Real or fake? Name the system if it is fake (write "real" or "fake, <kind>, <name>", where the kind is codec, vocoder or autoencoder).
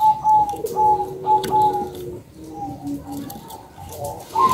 real